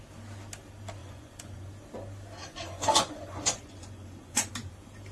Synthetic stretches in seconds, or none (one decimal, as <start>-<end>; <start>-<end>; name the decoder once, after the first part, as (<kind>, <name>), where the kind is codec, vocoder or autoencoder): 1.0-1.7 (vocoder, Vocos); 2.4-4.5